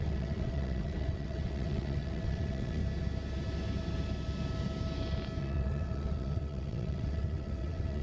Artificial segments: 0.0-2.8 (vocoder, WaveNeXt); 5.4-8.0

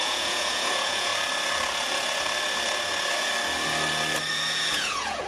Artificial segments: 0.0-1.1 (vocoder, Vocos); 4.3-5.3

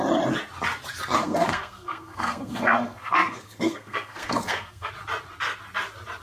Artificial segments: 1.2-4.9 (codec, SNAC)

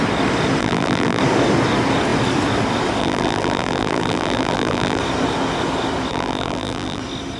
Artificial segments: 0.6-1.2 (vocoder, BigVGAN v2); 3.0-5.0; 6.1-7.0

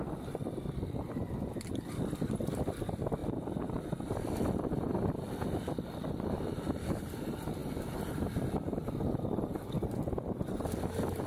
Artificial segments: none